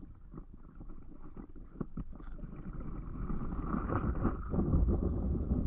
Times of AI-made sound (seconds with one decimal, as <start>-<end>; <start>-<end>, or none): none